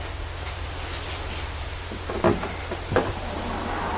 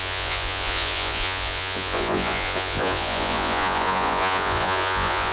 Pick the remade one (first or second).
second